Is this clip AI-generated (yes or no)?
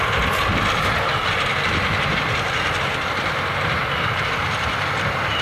no